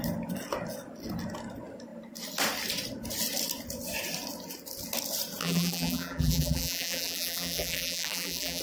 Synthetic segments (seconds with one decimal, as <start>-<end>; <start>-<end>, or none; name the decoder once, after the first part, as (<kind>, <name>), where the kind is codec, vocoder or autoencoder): 5.4-8.6 (vocoder, BigVGAN v2)

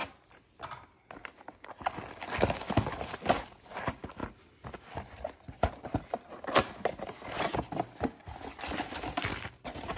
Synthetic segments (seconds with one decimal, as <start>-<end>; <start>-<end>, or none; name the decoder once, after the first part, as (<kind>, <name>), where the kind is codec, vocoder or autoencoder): none

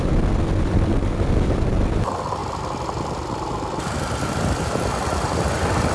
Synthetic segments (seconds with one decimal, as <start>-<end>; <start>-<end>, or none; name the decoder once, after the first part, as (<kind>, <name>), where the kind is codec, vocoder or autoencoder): none

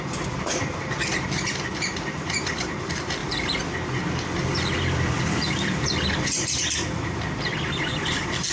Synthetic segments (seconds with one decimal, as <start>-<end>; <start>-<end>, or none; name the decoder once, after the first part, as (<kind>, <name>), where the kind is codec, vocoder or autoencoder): 0.0-8.5 (vocoder, BigVGAN v2)

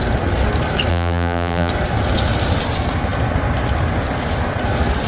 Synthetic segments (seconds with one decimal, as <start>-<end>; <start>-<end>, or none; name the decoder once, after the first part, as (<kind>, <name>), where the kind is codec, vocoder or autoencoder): 0.9-1.7 (vocoder, BigVGAN v2)

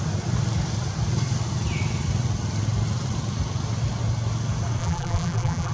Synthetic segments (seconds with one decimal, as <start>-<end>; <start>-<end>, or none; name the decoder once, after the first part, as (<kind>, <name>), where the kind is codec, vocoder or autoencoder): 4.8-5.7 (vocoder, BigVGAN v2)